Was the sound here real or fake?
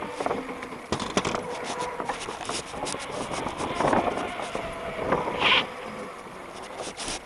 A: real